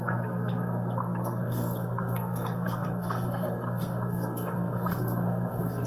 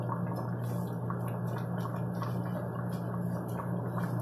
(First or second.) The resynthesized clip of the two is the first